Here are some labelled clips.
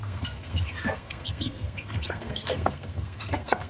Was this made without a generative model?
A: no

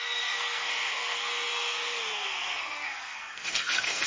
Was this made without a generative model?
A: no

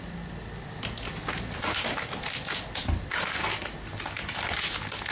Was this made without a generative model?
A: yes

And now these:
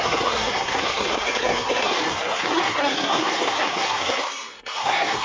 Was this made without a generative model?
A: no